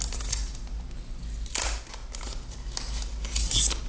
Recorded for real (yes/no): yes